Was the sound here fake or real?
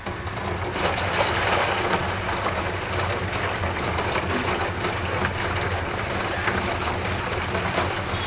real